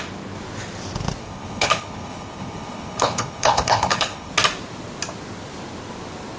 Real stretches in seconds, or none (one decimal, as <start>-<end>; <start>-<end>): 0.0-1.2; 4.3-6.4